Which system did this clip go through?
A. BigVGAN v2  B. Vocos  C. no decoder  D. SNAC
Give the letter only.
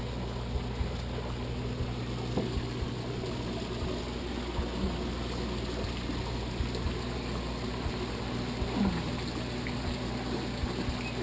C